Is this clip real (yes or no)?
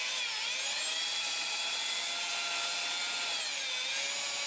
yes